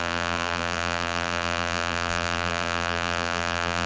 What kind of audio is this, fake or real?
fake